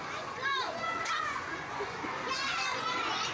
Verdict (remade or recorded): remade